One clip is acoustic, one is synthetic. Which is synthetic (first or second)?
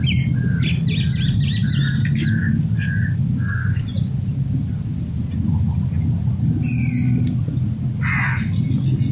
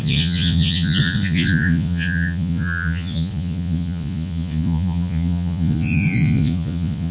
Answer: second